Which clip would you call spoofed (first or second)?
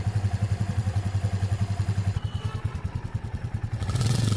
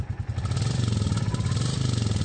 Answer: first